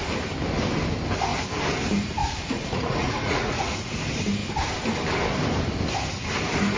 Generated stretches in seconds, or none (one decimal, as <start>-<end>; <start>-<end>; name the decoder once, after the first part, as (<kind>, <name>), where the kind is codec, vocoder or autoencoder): 2.2-3.9 (vocoder, Vocos)